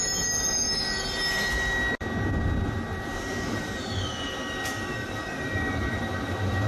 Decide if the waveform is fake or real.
real